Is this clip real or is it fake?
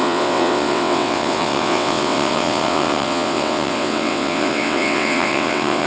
fake